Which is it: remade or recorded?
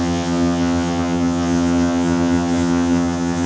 remade